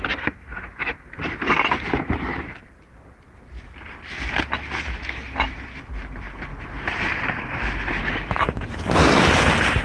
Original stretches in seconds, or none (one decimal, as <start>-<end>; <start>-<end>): 0.0-0.5; 1.5-6.5; 9.2-9.8